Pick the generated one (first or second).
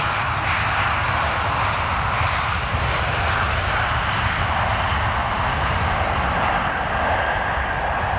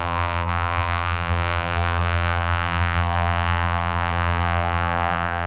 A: second